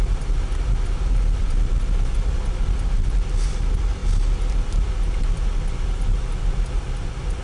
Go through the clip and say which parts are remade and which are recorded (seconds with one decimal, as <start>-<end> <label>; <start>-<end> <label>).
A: 0.0-7.4 recorded